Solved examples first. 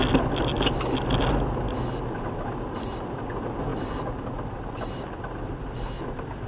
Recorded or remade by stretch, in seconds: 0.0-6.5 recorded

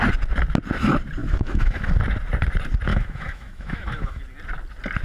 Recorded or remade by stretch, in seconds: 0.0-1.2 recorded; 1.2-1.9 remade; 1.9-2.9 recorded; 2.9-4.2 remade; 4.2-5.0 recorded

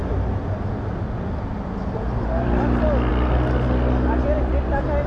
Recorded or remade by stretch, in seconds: 0.0-5.1 recorded